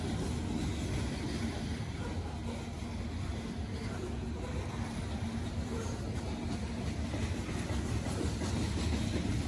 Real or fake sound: real